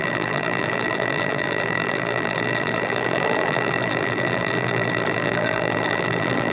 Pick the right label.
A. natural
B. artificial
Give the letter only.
B